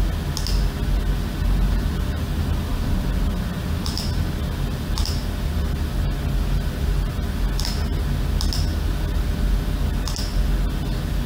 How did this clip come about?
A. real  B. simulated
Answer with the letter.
A